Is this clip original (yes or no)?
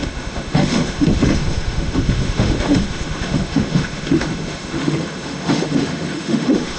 no